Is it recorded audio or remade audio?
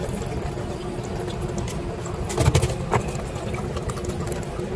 recorded